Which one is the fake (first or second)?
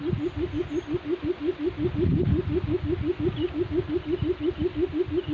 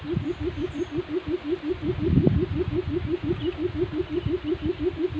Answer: second